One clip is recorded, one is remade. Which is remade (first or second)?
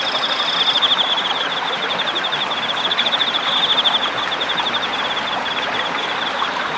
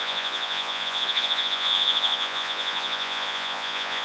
second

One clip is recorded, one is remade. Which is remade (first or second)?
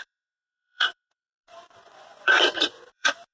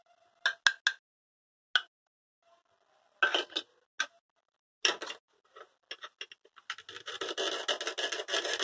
first